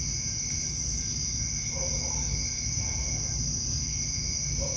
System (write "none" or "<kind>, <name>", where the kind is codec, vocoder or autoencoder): none